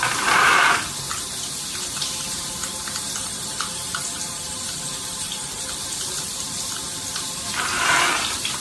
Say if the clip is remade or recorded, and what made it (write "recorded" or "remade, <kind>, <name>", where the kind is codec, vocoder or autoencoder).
remade, vocoder, BigVGAN v2